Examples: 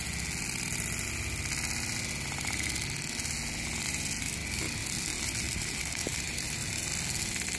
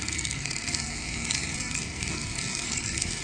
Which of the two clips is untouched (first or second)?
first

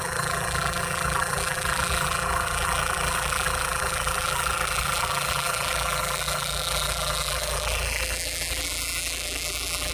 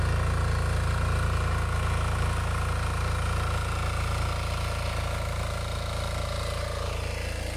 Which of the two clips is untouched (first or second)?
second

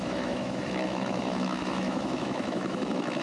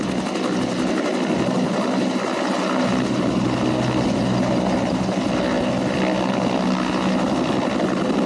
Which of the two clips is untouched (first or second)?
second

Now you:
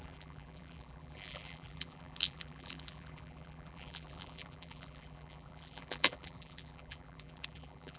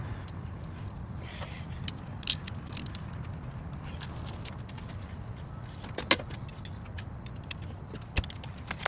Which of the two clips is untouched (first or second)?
second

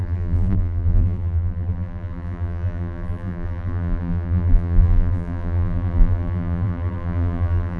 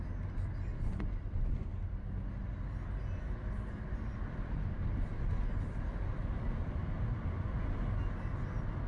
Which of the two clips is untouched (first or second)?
second